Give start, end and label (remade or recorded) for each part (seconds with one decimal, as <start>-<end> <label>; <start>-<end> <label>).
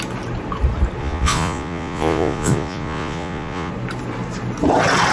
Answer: 0.0-1.0 recorded; 1.0-3.7 remade; 3.7-5.1 recorded